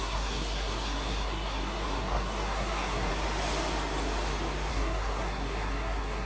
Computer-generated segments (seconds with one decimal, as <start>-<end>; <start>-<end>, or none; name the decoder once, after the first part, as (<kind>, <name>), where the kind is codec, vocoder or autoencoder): 0.0-3.1 (codec, SNAC); 4.7-6.3